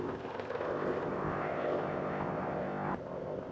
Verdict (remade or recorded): remade